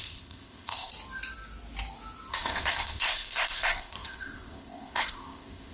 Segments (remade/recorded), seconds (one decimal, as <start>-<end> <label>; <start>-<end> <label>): 0.0-0.9 remade; 0.9-2.3 recorded; 2.3-5.7 remade